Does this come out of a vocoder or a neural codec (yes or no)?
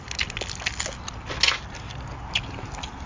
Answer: no